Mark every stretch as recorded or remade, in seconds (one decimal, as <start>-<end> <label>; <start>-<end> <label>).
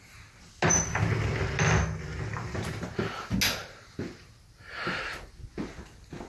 0.0-2.3 recorded; 2.3-3.1 remade; 3.1-3.6 recorded; 3.6-5.3 remade; 5.3-6.3 recorded